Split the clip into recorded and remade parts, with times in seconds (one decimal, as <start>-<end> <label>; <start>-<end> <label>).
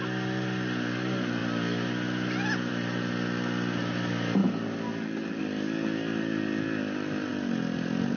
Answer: 0.0-8.2 recorded